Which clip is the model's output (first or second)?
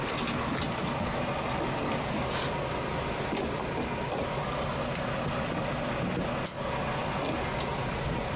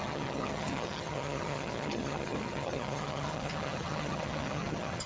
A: second